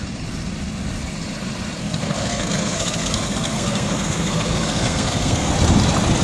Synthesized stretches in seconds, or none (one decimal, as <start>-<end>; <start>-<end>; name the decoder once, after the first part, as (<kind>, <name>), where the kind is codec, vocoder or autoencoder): 1.8-5.5 (codec, SNAC)